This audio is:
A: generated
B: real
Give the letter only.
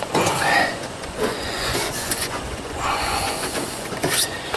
A